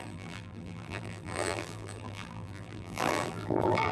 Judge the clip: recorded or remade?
remade